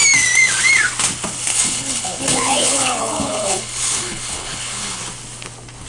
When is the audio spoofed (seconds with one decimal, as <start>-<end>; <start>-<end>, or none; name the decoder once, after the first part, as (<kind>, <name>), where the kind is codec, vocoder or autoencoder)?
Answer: 1.5-5.0 (codec, HILCodec)